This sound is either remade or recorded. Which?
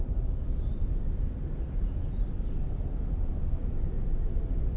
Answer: recorded